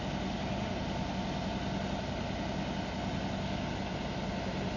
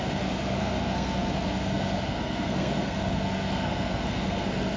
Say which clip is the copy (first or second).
second